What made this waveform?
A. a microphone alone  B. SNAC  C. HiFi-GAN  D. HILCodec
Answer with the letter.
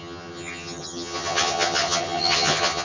C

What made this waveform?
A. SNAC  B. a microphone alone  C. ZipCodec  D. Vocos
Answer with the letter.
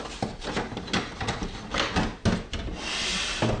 B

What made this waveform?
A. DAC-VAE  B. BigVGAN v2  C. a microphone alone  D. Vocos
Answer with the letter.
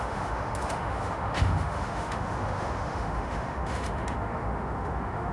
A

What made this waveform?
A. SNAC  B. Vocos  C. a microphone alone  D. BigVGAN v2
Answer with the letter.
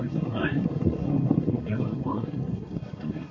A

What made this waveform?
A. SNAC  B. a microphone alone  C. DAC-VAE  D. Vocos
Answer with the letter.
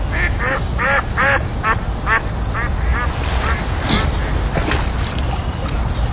B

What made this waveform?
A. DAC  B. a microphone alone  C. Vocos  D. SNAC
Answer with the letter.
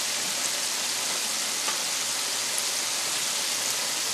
B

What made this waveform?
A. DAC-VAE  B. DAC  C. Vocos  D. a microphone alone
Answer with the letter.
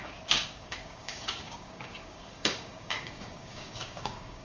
B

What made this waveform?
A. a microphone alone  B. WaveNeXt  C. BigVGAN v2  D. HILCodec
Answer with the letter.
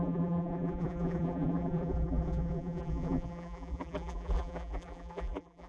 C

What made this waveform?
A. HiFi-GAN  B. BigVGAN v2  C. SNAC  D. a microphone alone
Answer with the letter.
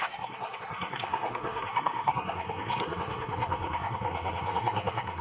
C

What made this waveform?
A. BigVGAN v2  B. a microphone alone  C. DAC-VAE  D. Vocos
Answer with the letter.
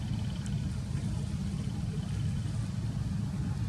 B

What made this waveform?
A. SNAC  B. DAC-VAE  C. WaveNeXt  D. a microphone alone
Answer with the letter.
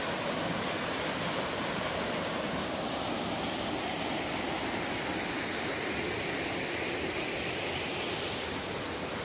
D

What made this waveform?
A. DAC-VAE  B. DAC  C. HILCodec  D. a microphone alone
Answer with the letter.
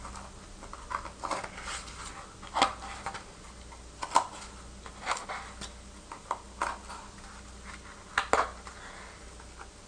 D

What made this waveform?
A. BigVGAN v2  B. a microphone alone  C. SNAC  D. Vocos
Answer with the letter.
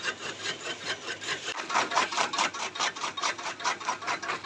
A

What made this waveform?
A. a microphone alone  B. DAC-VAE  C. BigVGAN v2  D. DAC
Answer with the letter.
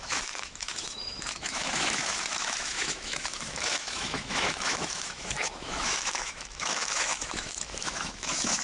B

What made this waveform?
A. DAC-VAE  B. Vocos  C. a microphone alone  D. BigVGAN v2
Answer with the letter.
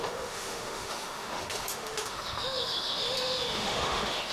A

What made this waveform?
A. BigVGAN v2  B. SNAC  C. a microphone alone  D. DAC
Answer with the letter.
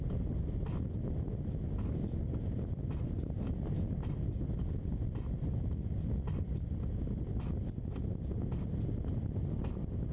C